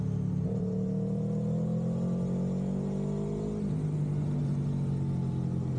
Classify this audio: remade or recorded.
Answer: recorded